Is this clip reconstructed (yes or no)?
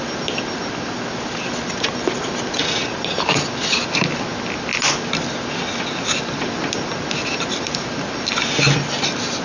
no